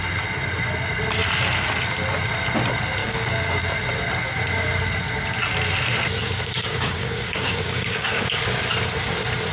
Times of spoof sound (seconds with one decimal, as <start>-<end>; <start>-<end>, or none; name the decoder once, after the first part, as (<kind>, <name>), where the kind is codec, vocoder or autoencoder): 3.0-3.6 (codec, DAC); 6.2-8.4